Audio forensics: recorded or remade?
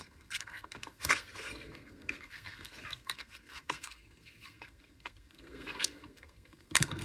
remade